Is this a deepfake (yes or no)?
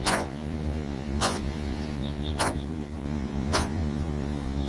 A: yes